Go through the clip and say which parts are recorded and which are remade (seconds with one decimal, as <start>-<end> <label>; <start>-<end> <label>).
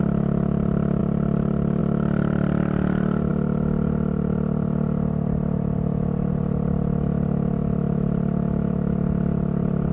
0.0-9.9 recorded